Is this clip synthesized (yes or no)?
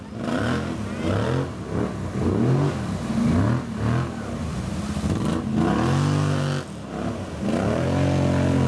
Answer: no